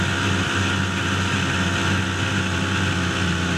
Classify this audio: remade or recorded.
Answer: recorded